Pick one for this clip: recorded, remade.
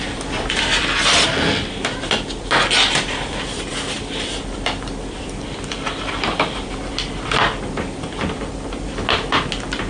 remade